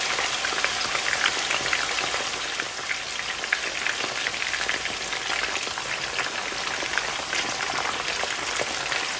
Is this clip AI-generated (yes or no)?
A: no